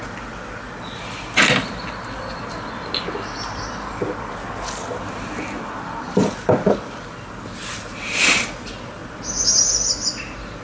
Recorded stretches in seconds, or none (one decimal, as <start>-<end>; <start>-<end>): 0.0-10.6